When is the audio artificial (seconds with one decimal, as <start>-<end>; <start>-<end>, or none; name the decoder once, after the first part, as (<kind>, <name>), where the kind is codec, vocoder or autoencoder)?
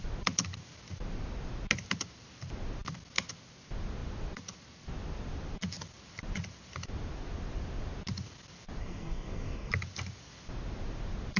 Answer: 8.8-9.7 (codec, SNAC)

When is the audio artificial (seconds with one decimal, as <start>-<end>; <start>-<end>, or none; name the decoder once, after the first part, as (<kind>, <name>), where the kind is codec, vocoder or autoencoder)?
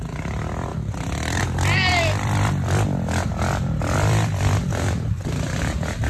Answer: 0.7-1.4 (vocoder, BigVGAN v2); 1.9-5.6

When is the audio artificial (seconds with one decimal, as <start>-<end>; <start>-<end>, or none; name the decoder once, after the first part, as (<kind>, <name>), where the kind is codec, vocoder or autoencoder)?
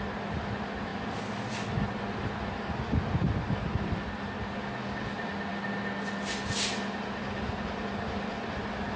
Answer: none